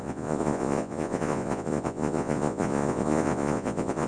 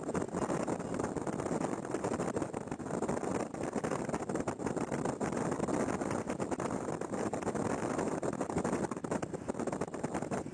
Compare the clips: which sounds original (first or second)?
second